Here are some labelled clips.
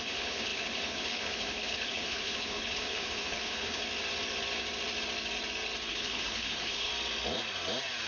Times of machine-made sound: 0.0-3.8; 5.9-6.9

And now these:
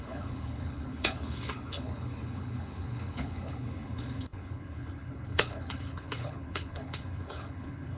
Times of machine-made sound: 0.0-8.0

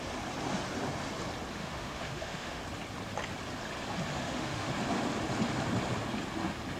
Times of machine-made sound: 1.6-2.6; 4.1-4.7

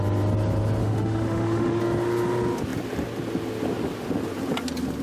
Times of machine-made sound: 0.8-1.8

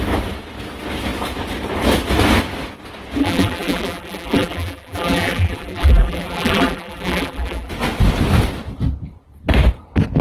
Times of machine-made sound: 3.2-7.7

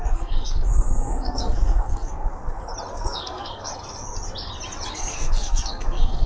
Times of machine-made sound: 0.0-2.4; 2.9-3.7; 4.9-6.3

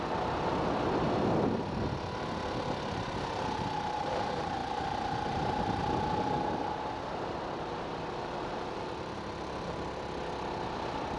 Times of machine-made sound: none

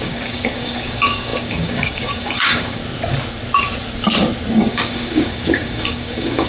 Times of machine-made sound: 0.0-2.8; 4.5-6.5